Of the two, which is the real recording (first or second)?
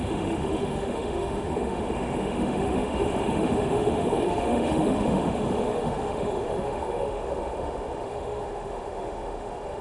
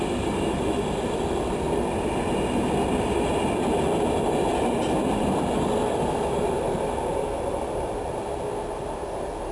second